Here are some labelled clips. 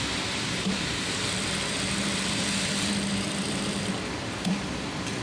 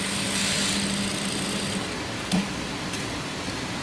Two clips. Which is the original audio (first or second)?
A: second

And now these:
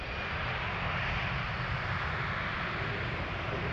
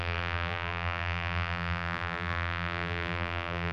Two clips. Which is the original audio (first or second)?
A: first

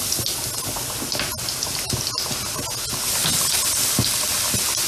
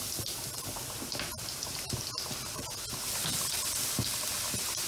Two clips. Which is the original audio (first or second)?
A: first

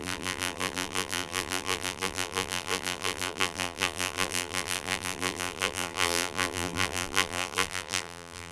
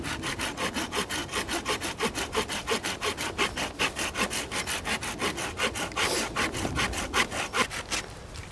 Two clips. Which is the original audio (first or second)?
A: second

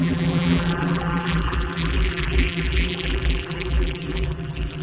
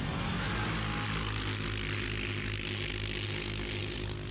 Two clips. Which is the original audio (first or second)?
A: second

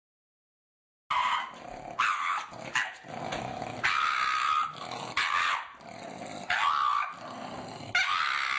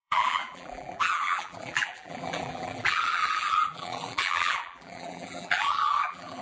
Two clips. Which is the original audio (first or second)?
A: first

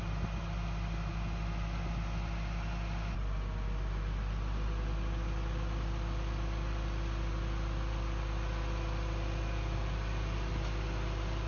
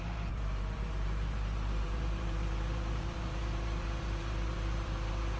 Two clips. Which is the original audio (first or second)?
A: first